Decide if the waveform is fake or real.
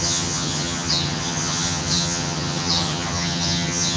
fake